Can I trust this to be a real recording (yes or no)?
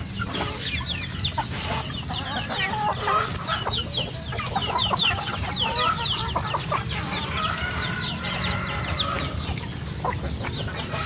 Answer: yes